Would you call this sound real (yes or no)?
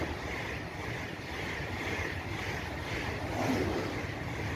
yes